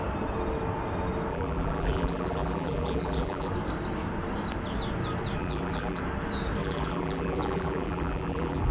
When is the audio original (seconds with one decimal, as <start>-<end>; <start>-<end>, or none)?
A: 0.0-1.3; 3.5-5.4; 6.0-6.6